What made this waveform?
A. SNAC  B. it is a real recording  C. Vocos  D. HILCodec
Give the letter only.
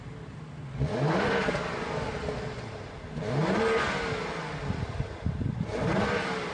B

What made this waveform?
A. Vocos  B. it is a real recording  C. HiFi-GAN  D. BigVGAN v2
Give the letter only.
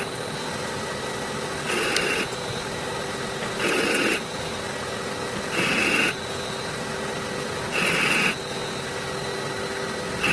B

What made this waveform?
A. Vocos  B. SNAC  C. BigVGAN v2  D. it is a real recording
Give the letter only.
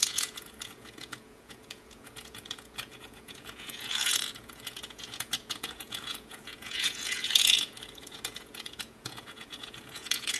A